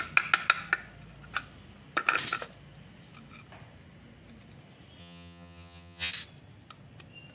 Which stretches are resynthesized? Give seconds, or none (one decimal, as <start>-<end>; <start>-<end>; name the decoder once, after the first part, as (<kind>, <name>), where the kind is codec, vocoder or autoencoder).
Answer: 5.0-6.1 (vocoder, HiFi-GAN)

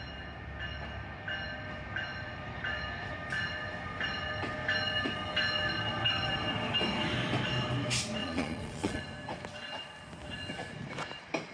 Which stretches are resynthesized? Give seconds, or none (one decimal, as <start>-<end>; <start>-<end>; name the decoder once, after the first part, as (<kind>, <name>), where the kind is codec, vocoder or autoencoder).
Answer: 8.2-9.0 (vocoder, Vocos)